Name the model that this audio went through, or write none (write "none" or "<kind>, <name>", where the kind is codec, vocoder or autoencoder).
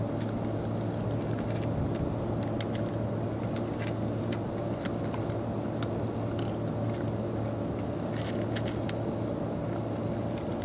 none